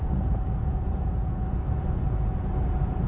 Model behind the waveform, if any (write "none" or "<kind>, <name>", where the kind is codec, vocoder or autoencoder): vocoder, Vocos